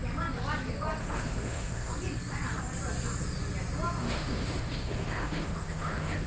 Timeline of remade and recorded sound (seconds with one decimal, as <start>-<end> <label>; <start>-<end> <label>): 0.0-1.0 recorded; 1.0-1.9 remade; 1.9-4.0 recorded; 4.0-6.3 remade